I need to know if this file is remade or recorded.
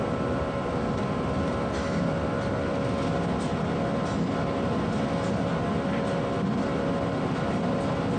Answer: recorded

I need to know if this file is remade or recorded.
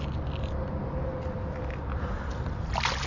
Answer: recorded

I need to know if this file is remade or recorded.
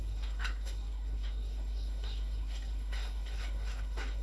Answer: remade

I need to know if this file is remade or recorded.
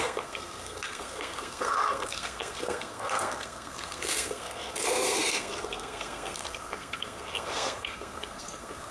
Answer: remade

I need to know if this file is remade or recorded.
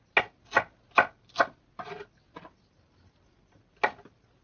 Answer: recorded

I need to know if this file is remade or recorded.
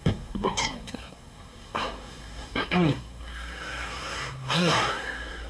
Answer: remade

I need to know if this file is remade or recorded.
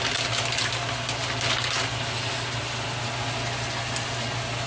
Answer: recorded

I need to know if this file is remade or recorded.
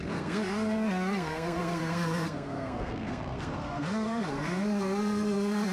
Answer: remade